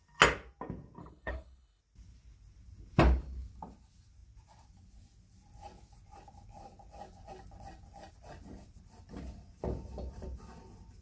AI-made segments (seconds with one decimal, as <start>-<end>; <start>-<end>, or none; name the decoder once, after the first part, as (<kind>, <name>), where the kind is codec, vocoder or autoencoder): 1.0-1.8 (codec, HILCodec)